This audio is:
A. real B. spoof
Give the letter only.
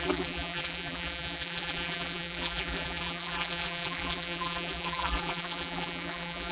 B